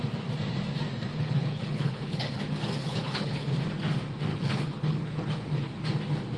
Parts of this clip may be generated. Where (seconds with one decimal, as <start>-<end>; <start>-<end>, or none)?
1.1-2.4; 2.8-3.6; 4.3-5.7